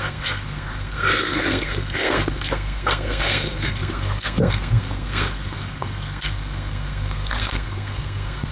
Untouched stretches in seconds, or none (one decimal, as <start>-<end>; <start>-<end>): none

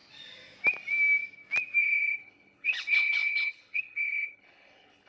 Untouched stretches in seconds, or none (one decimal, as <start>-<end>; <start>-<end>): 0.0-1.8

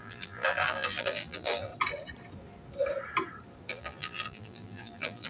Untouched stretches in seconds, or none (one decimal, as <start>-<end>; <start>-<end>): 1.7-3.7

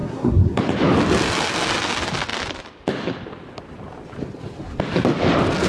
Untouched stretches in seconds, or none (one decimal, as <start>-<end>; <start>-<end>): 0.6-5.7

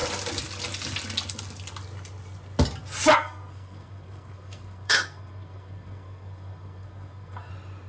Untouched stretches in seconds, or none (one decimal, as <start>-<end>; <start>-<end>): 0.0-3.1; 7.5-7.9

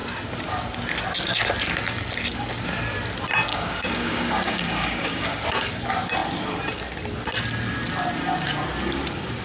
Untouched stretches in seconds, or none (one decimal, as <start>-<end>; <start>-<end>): 0.0-3.5; 5.4-9.4